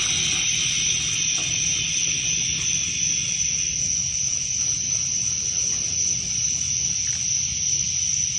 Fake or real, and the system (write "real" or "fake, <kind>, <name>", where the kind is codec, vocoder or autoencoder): real